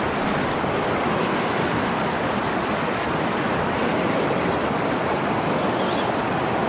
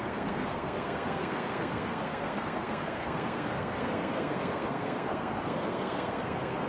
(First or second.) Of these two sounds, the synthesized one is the second